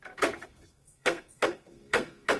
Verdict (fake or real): fake